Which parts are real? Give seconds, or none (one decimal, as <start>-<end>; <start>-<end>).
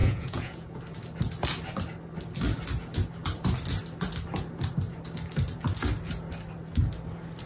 0.8-7.5